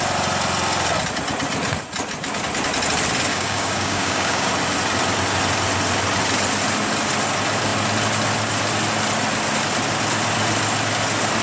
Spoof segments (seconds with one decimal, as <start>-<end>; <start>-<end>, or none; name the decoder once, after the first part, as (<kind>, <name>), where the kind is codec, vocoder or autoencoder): 3.3-4.5 (codec, DAC)